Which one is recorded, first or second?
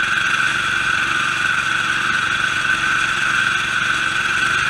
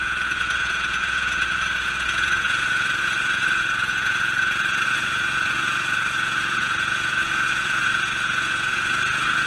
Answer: first